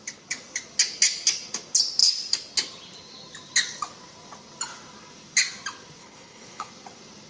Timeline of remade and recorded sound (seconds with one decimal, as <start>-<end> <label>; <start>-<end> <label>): 0.0-6.0 recorded; 6.0-6.7 remade; 6.7-7.3 recorded